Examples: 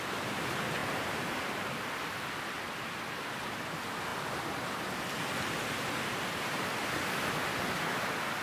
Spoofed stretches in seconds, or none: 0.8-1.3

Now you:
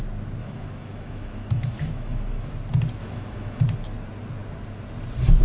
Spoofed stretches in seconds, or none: 0.4-2.5; 3.0-3.6

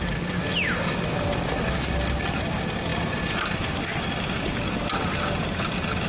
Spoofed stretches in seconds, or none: none

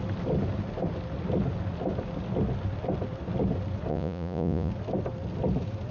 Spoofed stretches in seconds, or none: 3.9-4.7

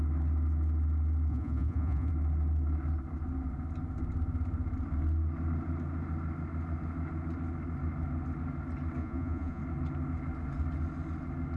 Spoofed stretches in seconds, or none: 1.3-2.1; 9.0-9.6

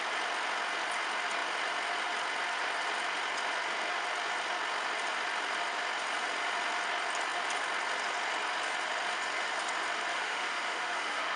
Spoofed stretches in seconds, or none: 10.1-11.4

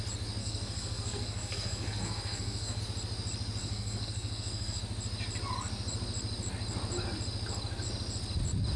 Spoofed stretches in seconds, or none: 0.4-2.8; 3.6-4.8

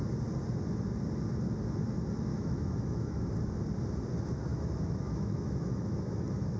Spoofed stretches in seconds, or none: 2.3-3.3; 4.5-6.6